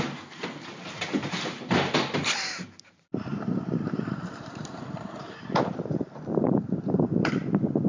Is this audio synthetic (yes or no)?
yes